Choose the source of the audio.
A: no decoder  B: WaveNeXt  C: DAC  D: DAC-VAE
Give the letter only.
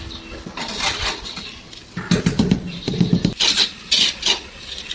A